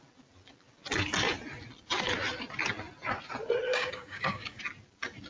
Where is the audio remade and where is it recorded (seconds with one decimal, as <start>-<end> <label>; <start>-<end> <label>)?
0.0-3.7 recorded; 3.7-4.6 remade; 4.6-5.3 recorded